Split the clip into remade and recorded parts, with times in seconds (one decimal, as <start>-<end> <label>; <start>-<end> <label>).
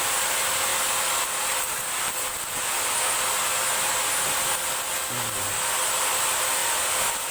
0.0-7.3 recorded